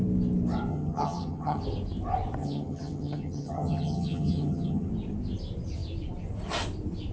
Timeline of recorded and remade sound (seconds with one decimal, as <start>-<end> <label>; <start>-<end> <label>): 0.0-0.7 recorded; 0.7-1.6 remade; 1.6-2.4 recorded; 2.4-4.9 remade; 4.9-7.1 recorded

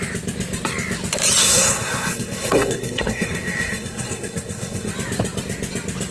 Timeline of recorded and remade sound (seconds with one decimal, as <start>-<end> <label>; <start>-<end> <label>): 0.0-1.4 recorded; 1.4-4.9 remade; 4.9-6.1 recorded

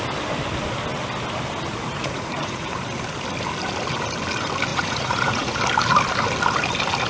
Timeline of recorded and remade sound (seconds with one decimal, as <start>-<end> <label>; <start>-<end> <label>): 0.0-2.0 recorded; 2.0-2.7 remade; 2.7-4.7 recorded; 4.7-5.6 remade; 5.6-7.1 recorded

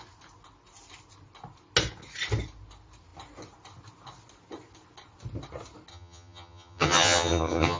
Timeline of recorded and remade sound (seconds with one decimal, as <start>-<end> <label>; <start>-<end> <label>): 0.0-5.9 recorded; 5.9-7.8 remade

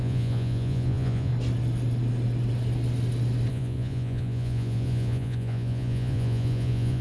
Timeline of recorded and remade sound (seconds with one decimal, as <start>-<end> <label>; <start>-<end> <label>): 0.0-1.3 remade; 1.3-3.5 recorded; 3.5-7.0 remade

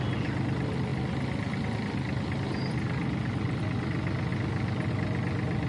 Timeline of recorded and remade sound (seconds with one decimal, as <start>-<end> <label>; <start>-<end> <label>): 0.0-5.7 recorded

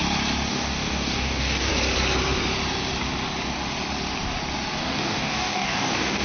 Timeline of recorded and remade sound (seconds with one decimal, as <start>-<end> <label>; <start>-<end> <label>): 0.0-0.5 recorded; 0.5-1.7 remade; 1.7-4.7 recorded; 4.7-6.2 remade

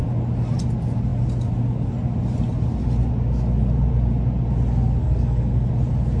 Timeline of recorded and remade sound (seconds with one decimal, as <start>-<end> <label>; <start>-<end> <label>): 0.0-5.0 recorded; 5.0-5.7 remade; 5.7-6.2 recorded